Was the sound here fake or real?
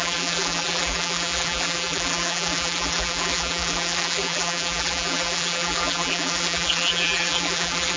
fake